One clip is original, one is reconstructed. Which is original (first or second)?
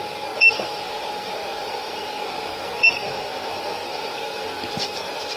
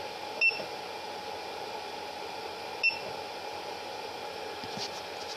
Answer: second